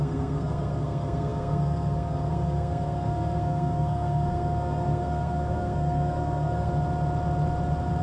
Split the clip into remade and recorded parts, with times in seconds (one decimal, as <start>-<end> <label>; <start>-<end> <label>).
0.0-6.7 remade; 6.7-8.0 recorded